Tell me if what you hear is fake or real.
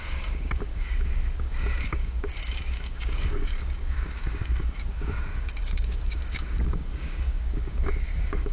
fake